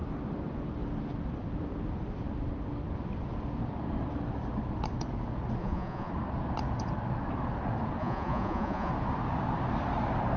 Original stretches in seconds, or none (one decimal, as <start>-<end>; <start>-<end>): 0.0-5.6; 6.1-8.0; 8.9-10.4